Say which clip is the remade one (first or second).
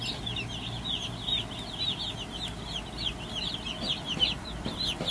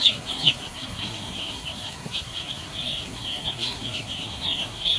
second